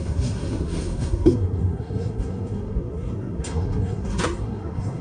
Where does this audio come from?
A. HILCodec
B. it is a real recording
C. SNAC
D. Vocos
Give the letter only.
C